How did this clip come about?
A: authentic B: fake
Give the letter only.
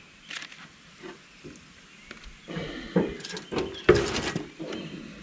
A